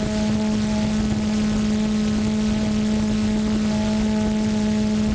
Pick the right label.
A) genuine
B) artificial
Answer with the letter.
A